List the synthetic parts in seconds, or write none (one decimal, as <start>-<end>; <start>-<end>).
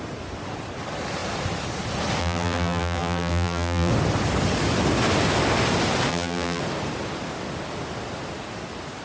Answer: 2.2-3.9; 6.1-6.6